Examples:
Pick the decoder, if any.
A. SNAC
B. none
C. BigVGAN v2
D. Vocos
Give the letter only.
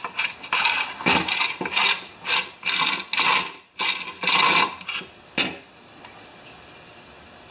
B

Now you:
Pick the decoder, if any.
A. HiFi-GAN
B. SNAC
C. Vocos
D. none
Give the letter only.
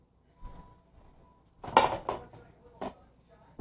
D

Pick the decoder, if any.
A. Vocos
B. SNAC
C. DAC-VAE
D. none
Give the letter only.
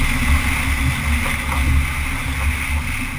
D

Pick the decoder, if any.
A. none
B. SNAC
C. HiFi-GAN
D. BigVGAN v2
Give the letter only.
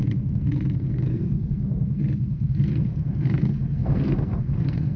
B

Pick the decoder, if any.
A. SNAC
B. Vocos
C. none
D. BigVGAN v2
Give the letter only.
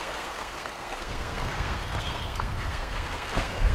A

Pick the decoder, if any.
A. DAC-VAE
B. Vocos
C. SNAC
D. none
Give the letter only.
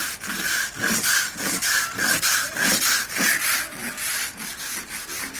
D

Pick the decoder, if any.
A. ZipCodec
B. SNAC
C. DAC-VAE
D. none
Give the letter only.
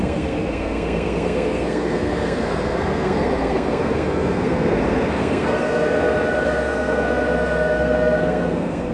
B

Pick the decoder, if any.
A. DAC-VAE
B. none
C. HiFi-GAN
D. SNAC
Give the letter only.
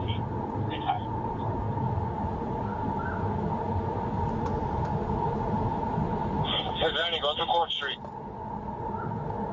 B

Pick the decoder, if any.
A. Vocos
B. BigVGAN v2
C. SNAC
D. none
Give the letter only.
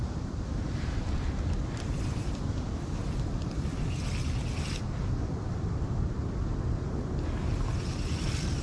D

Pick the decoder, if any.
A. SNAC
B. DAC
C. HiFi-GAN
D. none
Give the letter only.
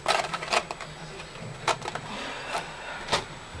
D